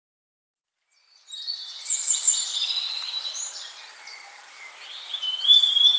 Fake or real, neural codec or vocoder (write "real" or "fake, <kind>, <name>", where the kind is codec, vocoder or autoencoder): fake, vocoder, BigVGAN v2